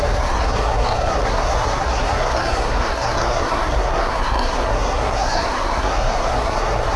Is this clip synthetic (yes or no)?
yes